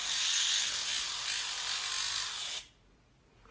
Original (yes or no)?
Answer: yes